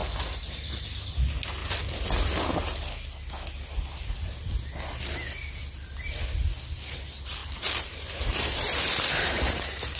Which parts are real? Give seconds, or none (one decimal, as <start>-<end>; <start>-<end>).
0.7-7.4